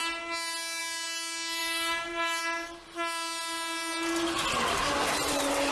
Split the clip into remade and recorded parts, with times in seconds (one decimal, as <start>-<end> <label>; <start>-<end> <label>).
0.0-1.6 recorded; 1.6-2.4 remade; 2.4-5.0 recorded; 5.0-5.7 remade